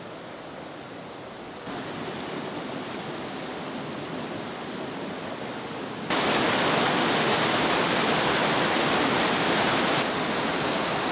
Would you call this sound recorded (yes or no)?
yes